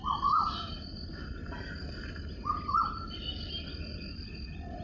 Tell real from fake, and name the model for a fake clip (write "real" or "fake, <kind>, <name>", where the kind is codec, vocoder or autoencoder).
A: real